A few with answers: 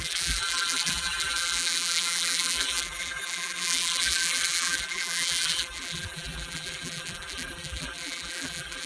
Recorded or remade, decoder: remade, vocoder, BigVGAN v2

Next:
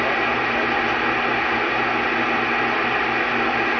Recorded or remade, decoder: recorded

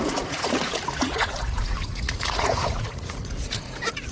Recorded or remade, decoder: remade, vocoder, Vocos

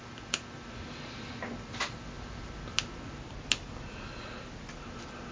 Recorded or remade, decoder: recorded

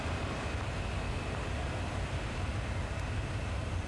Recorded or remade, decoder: recorded